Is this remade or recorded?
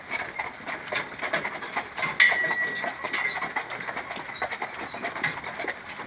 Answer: recorded